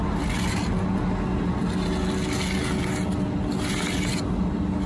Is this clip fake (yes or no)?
no